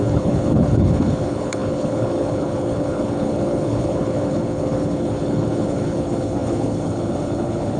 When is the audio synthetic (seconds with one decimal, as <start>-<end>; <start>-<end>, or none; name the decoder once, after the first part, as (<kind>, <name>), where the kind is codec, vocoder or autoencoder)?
0.0-7.8 (codec, HILCodec)